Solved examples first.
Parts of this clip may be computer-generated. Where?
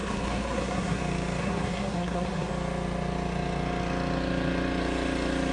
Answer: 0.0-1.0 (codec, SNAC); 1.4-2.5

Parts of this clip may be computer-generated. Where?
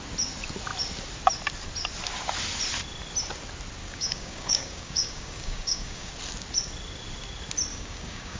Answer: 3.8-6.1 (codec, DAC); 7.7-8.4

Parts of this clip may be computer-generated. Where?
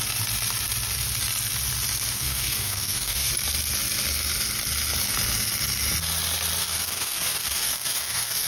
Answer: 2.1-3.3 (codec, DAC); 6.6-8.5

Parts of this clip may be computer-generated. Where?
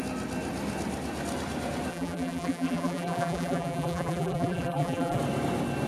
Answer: 1.9-5.2 (vocoder, BigVGAN v2)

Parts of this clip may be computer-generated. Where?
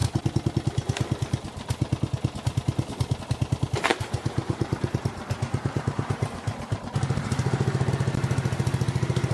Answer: 3.9-7.8 (vocoder, BigVGAN v2)